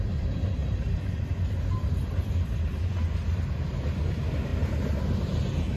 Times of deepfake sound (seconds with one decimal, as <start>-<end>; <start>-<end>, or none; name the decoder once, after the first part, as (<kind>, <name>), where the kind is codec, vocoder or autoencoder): none